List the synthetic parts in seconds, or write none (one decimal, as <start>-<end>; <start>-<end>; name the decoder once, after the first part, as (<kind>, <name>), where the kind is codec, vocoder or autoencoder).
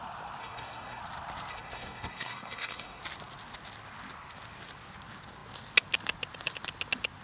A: 0.4-1.0 (codec, SNAC); 1.5-3.0